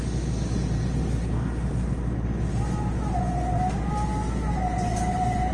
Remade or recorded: recorded